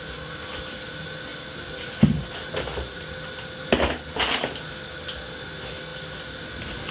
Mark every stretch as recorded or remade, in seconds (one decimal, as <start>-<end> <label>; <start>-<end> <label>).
0.0-5.9 recorded; 5.9-6.9 remade